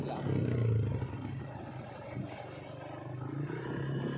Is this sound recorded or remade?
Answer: recorded